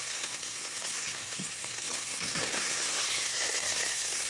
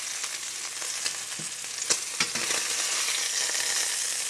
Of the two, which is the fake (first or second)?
first